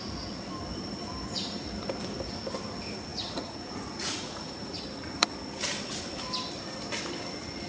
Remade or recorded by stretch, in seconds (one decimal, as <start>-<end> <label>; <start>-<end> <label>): 0.0-3.1 recorded; 3.1-4.8 remade; 4.8-7.7 recorded

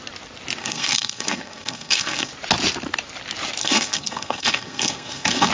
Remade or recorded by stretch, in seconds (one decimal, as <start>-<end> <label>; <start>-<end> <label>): 0.0-0.6 recorded; 0.6-2.3 remade; 2.3-3.6 recorded; 3.6-5.5 remade

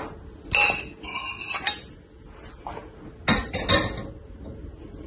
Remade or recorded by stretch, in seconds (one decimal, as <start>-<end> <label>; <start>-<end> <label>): 0.0-5.1 recorded